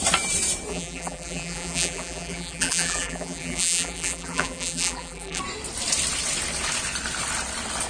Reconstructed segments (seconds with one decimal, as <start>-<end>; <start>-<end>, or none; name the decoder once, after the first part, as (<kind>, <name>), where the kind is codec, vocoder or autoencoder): 0.7-5.4 (vocoder, BigVGAN v2)